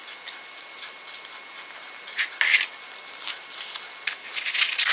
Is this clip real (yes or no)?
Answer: yes